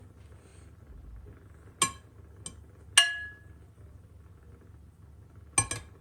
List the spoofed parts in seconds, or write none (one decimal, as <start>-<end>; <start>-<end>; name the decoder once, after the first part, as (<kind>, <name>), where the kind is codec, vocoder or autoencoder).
none